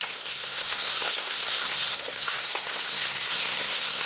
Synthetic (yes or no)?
yes